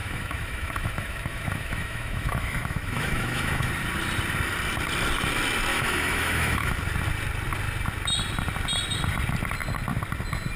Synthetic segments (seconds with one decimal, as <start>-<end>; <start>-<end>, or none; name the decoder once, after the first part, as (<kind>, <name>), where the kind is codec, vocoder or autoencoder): 0.0-3.7 (autoencoder, DAC-VAE); 5.7-6.7